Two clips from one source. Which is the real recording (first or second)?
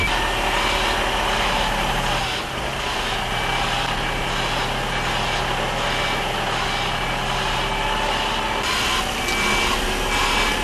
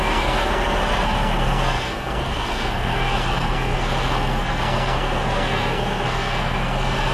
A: first